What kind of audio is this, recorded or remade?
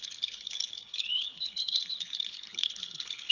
remade